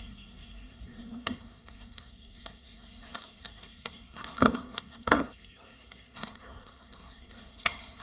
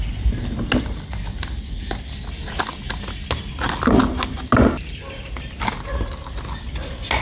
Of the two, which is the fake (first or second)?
first